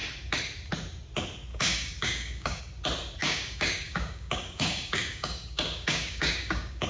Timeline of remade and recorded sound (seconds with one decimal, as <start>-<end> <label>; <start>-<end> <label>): 0.0-1.5 recorded; 1.5-2.6 remade; 2.6-3.2 recorded; 3.2-6.9 remade